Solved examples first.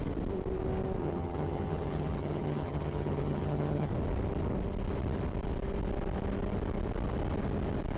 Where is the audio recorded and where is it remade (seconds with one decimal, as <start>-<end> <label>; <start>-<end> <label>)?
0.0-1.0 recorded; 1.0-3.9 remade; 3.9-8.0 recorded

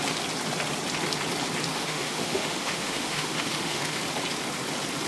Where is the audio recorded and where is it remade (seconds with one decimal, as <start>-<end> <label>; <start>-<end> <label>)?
0.0-1.7 recorded; 1.7-4.0 remade; 4.0-5.1 recorded

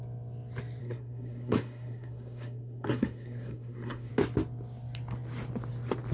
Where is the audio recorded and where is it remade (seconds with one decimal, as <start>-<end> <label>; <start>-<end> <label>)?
0.0-0.8 recorded; 0.8-4.1 remade; 4.1-6.1 recorded